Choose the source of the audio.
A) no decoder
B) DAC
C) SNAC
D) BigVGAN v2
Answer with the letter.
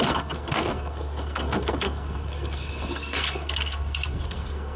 C